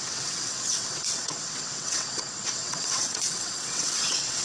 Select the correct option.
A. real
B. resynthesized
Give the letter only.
B